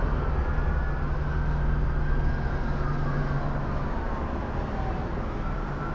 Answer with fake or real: real